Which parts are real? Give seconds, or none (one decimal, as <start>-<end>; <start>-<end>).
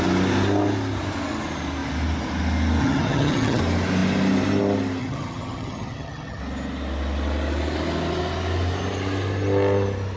0.0-2.8; 3.6-5.0; 6.4-10.2